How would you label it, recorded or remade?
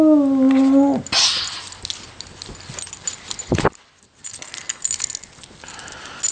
recorded